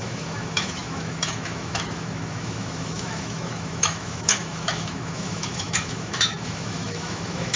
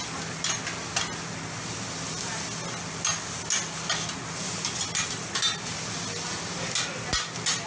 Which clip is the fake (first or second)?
first